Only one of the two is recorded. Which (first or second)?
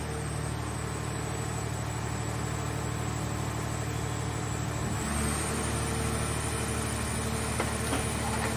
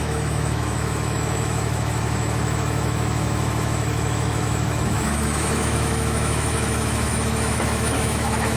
first